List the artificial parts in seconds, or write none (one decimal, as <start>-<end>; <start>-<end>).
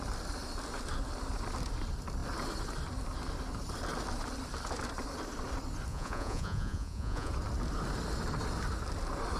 5.9-7.3